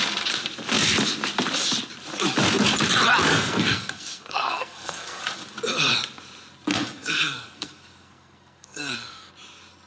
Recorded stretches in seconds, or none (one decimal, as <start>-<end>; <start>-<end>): 0.0-3.3; 5.2-6.7; 9.3-9.9